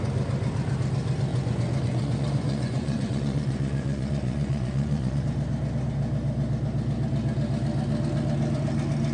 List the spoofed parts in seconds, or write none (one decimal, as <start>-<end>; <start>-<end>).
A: 1.3-5.2